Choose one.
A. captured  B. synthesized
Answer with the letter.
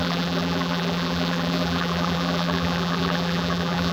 B